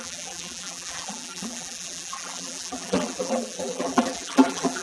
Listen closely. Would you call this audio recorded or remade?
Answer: remade